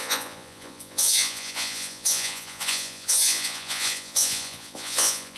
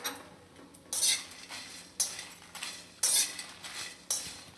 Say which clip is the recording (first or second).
second